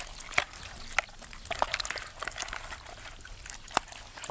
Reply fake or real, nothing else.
real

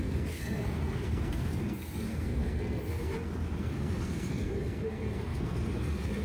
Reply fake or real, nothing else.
fake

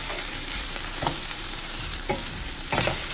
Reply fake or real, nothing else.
fake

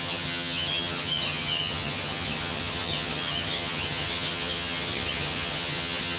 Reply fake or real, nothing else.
fake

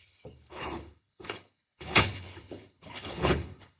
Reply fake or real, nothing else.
fake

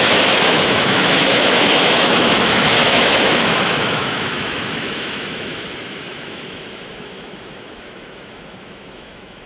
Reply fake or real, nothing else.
fake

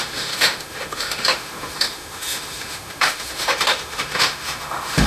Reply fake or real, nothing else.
fake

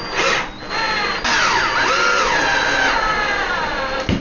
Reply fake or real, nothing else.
real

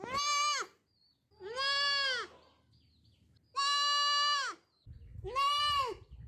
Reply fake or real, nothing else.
real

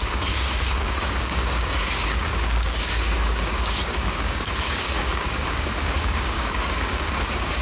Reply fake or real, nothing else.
fake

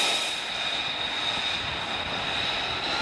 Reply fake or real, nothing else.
real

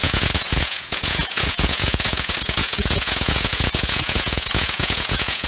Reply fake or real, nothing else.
fake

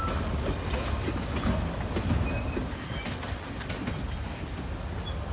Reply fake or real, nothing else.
real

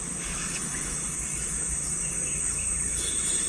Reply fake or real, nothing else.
fake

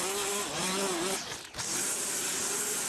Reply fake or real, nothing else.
real